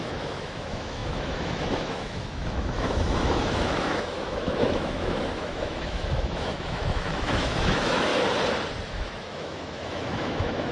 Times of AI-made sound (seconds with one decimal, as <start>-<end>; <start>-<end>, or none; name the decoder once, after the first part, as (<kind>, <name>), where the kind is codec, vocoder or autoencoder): 0.0-8.1 (autoencoder, DAC-VAE); 8.9-10.7